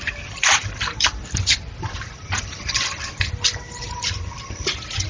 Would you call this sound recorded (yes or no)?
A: no